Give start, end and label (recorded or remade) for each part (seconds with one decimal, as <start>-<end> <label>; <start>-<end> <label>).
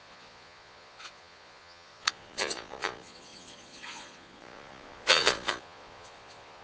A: 0.0-6.6 remade